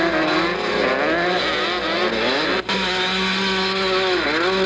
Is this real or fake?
real